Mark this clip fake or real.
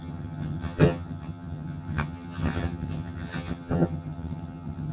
fake